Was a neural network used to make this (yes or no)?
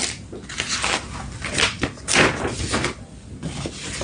no